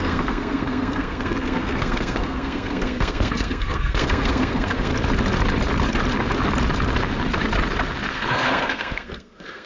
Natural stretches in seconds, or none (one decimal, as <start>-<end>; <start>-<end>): 4.9-8.1